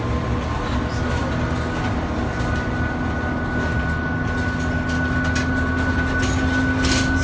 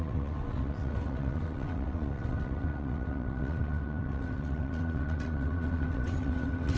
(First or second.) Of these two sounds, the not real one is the second